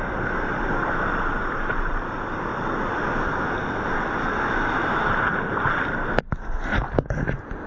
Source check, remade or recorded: recorded